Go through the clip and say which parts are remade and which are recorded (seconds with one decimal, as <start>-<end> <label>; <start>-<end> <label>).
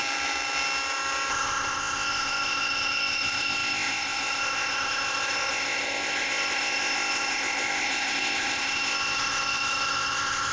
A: 0.0-1.3 recorded; 1.3-10.5 remade